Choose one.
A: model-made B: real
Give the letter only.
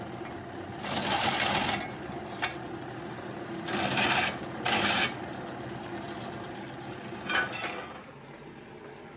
B